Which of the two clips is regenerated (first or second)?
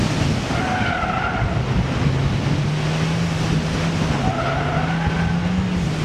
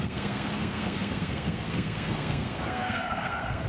second